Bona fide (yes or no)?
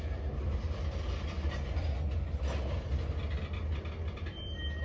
yes